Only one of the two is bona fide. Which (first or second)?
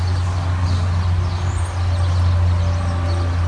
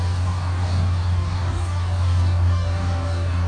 first